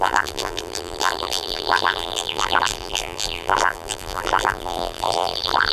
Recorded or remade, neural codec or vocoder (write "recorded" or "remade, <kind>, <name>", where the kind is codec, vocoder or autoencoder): remade, vocoder, BigVGAN v2